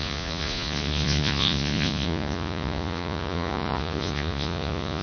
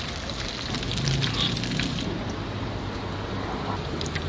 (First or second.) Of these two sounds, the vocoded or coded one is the first